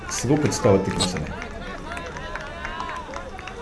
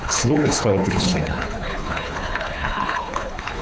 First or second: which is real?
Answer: first